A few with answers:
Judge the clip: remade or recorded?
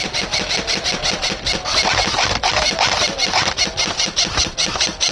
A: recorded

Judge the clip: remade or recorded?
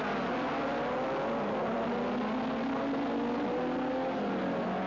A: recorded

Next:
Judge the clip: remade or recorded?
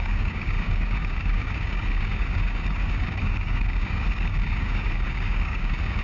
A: remade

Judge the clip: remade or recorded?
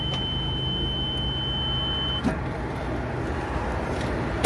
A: recorded